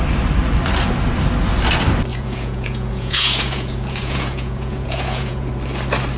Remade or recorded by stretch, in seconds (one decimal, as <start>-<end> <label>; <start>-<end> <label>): 0.0-2.1 recorded; 2.1-5.5 remade; 5.5-6.2 recorded